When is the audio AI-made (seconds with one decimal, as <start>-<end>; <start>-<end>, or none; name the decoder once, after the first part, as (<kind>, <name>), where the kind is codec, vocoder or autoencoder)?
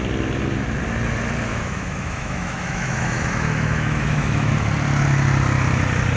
1.5-4.5 (autoencoder, DAC-VAE)